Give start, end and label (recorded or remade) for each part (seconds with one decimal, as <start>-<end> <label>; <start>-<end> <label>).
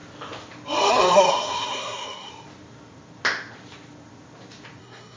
0.0-0.9 recorded; 0.9-2.3 remade; 2.3-4.8 recorded; 4.8-5.2 remade